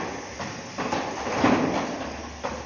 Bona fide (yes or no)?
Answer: yes